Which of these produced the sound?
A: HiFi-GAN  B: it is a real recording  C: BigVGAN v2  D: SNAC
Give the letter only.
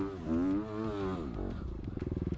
B